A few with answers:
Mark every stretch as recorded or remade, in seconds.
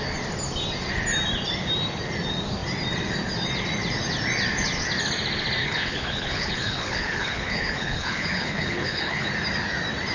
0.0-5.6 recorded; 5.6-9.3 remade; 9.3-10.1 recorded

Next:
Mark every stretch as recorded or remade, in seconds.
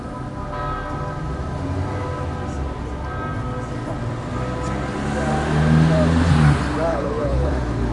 0.0-6.9 recorded; 6.9-7.5 remade; 7.5-7.9 recorded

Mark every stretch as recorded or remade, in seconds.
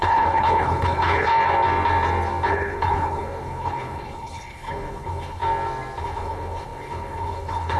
0.0-1.3 remade; 1.3-2.5 recorded; 2.5-5.4 remade; 5.4-6.0 recorded; 6.0-7.8 remade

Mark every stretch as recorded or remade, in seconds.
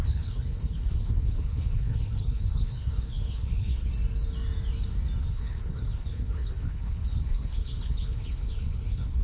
0.0-3.9 remade; 3.9-5.2 recorded; 5.2-9.2 remade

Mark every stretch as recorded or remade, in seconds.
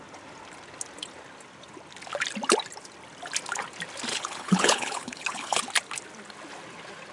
0.0-4.1 recorded; 4.1-5.6 remade; 5.6-7.1 recorded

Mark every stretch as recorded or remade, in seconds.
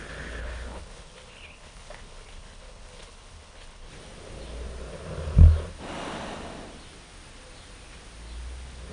0.0-0.4 recorded; 0.4-3.9 remade; 3.9-8.9 recorded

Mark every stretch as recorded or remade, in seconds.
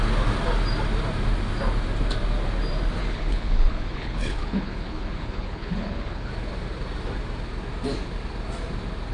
0.0-3.0 recorded; 3.0-6.3 remade; 6.3-9.1 recorded